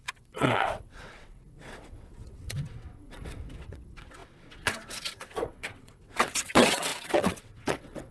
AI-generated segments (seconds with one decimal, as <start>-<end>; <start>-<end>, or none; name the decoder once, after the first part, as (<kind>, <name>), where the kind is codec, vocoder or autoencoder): 0.0-8.1 (vocoder, WaveNeXt)